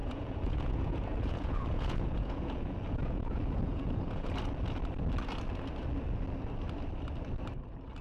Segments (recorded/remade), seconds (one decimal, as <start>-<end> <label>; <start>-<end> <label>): 0.0-4.3 remade; 4.3-8.0 recorded